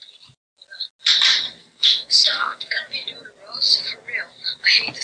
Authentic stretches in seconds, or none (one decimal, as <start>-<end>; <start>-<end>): 0.0-1.6; 2.8-5.0